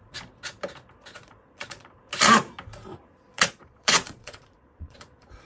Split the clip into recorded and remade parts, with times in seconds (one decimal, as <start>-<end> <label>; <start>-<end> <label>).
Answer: 0.0-1.1 recorded; 1.1-1.9 remade; 1.9-3.3 recorded; 3.3-5.5 remade